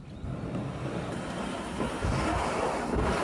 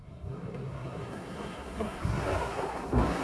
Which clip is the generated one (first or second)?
second